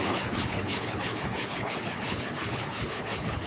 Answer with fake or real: fake